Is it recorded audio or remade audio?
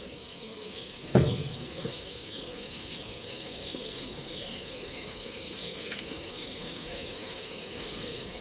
remade